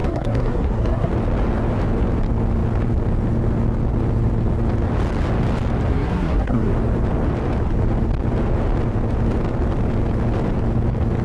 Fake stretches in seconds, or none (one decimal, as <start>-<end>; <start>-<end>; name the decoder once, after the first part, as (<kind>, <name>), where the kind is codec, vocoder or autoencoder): 0.0-1.1 (codec, SNAC); 5.9-6.7